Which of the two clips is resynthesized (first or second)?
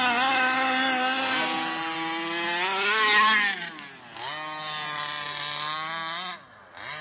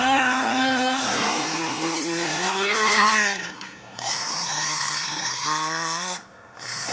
second